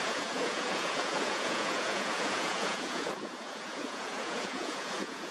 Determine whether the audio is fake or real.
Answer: fake